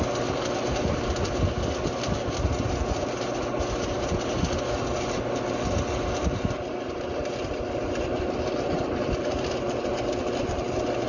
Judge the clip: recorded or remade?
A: recorded